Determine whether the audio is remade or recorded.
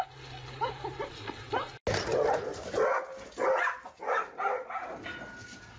recorded